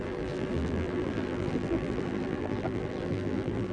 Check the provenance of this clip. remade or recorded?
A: remade